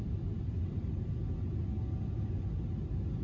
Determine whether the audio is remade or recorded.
recorded